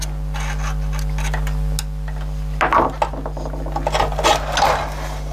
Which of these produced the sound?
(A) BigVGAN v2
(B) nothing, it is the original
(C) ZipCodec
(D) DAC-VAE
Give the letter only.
B